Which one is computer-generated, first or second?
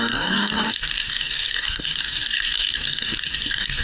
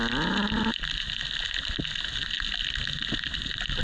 first